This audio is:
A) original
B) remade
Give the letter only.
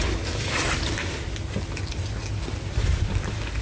A